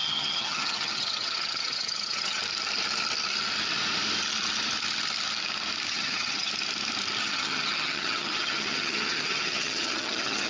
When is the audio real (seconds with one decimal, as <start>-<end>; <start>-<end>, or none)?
2.4-5.9; 6.5-7.2